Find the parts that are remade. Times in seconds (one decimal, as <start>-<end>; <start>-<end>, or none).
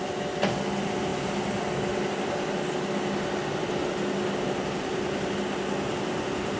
none